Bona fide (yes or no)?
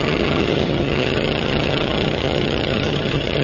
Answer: no